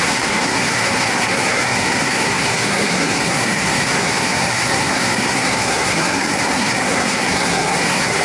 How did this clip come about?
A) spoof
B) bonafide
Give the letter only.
A